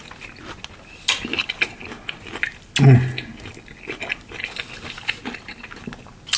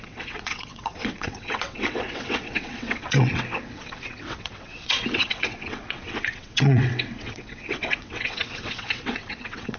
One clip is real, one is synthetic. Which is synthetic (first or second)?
second